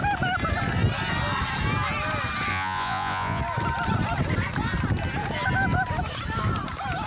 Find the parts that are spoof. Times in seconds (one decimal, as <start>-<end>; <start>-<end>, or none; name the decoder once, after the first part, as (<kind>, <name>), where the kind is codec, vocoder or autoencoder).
2.5-3.4 (vocoder, Vocos)